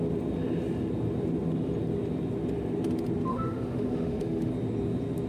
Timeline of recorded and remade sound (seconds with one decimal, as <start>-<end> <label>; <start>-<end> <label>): 0.0-3.3 recorded; 3.3-4.5 remade; 4.5-5.3 recorded